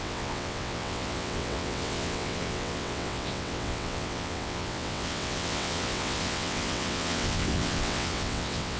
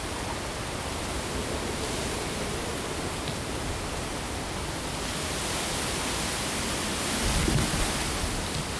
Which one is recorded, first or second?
second